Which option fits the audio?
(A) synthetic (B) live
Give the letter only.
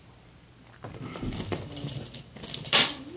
B